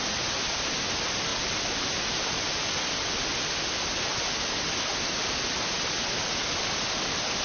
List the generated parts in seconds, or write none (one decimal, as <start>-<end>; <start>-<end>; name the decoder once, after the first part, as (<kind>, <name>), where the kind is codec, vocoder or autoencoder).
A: none